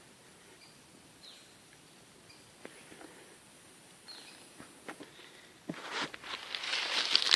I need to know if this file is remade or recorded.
recorded